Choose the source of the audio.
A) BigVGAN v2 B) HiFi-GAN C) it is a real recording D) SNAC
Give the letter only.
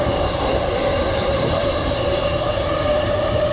A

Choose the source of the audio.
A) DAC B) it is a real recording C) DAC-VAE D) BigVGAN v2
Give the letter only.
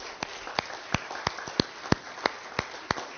B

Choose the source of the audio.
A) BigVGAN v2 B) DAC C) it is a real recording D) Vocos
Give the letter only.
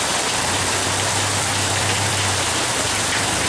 A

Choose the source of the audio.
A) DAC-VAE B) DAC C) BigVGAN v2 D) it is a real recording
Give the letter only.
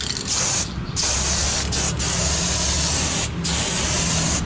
D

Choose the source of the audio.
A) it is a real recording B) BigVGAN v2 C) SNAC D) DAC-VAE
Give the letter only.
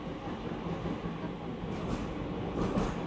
A